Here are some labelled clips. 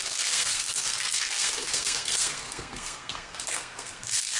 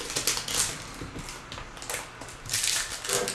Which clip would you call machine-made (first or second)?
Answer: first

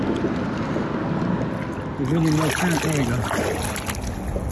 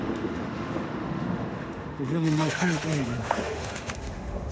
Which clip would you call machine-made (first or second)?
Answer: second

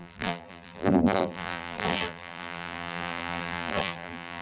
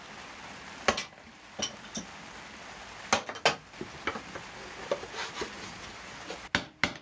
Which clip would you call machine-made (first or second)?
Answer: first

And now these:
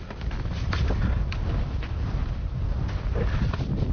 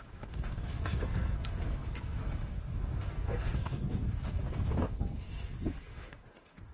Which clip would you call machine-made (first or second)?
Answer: second